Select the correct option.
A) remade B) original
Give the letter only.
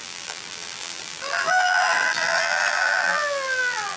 A